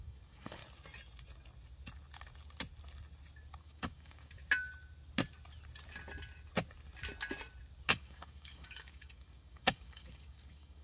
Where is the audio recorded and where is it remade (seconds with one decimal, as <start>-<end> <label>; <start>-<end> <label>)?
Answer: 0.0-0.6 remade; 0.6-3.6 recorded; 3.6-4.4 remade; 4.4-7.9 recorded; 7.9-10.8 remade

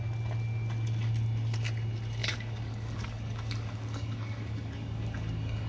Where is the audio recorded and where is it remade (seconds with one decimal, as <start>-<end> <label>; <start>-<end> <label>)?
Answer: 0.0-2.2 recorded; 2.2-5.7 remade

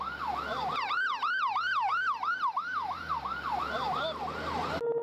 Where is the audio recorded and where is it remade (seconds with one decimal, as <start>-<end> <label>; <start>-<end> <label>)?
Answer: 0.0-5.0 recorded

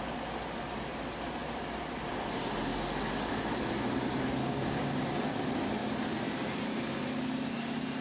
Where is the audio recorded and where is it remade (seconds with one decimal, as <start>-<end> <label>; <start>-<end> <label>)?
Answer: 0.0-4.4 recorded; 4.4-5.0 remade; 5.0-8.0 recorded

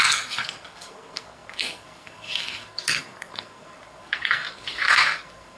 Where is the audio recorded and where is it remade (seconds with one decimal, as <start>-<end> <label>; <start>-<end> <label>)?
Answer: 0.0-5.6 remade